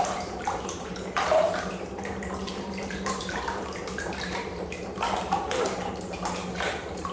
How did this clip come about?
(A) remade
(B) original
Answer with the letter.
A